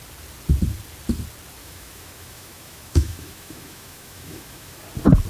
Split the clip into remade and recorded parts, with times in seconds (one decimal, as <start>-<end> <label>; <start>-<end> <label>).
0.0-1.6 recorded; 1.6-4.8 remade; 4.8-5.3 recorded